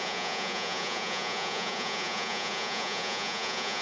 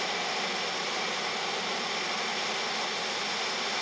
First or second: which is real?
second